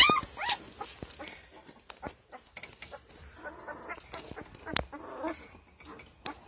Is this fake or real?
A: real